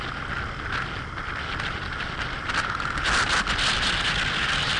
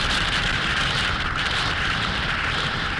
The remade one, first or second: second